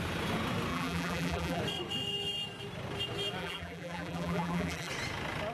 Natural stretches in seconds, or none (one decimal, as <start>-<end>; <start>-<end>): 0.0-0.7; 1.6-3.4; 4.9-5.5